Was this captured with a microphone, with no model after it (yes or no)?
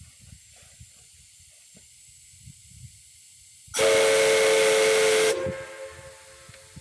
yes